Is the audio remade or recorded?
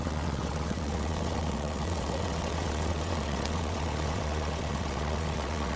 remade